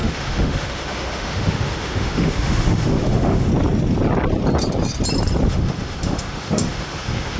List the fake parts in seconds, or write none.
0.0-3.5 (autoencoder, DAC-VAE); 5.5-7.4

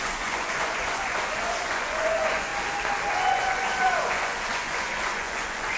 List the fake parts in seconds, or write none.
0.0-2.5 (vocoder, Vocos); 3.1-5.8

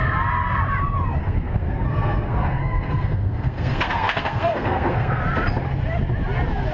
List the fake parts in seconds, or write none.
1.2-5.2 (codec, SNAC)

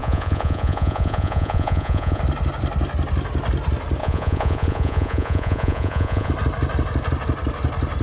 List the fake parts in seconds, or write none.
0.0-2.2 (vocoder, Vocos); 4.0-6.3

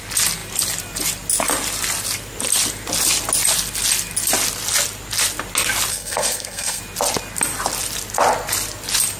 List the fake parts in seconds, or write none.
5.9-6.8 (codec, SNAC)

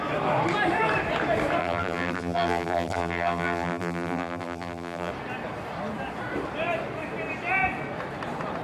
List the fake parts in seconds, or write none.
1.6-5.1 (vocoder, BigVGAN v2)

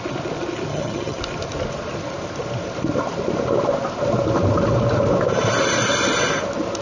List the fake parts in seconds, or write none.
0.7-1.2 (vocoder, HiFi-GAN)

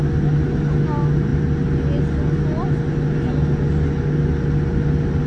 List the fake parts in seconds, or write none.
none